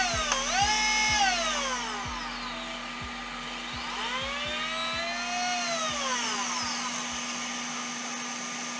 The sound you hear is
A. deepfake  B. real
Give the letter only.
B